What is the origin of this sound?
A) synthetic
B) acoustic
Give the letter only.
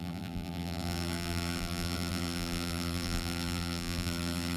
A